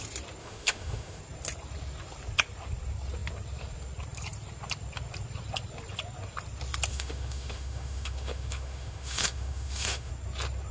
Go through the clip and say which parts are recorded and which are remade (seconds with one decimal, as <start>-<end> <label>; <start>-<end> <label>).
0.0-0.4 recorded; 0.4-1.2 remade; 1.2-6.9 recorded; 6.9-10.1 remade; 10.1-10.7 recorded